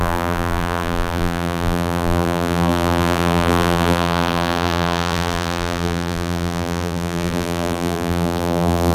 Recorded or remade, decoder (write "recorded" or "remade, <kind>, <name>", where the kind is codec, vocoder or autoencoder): remade, vocoder, BigVGAN v2